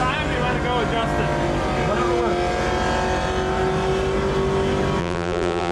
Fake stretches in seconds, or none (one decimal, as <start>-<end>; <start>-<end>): 5.0-5.7